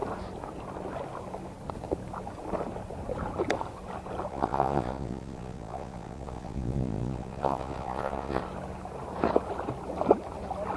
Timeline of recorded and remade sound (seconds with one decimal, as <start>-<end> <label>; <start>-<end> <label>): 0.0-4.3 recorded; 4.3-8.4 remade; 8.4-10.8 recorded